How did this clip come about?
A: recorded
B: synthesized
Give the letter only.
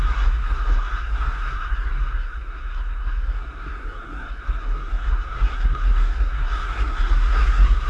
B